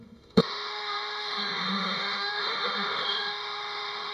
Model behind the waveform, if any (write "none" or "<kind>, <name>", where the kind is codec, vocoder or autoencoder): autoencoder, DAC-VAE